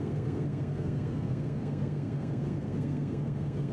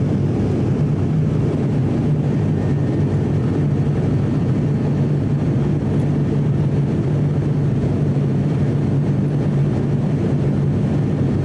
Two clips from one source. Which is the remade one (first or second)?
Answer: first